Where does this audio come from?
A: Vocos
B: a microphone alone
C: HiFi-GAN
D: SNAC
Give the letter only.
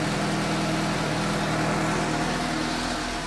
B